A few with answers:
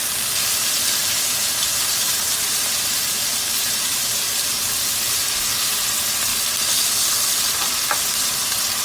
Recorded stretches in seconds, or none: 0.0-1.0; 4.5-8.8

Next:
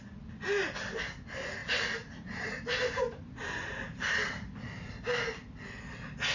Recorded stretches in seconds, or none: 0.0-1.6; 4.9-6.3

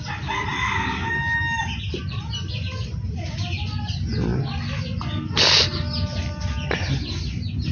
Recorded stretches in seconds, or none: 0.0-7.7

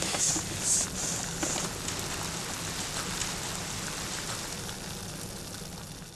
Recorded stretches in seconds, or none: 0.0-6.2

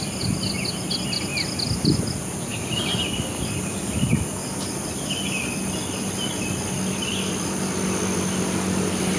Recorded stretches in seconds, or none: 0.0-1.3; 2.0-9.2

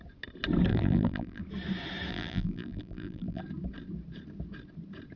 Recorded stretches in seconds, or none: 0.0-0.7; 1.4-2.1; 3.4-5.2

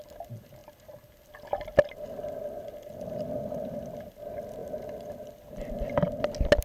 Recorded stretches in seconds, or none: 0.0-6.6

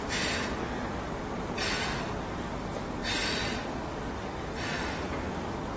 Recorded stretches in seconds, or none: 0.0-5.8